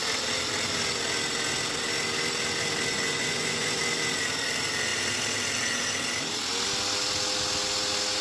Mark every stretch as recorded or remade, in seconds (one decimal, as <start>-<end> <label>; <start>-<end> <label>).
0.0-2.9 recorded; 2.9-3.8 remade; 3.8-8.2 recorded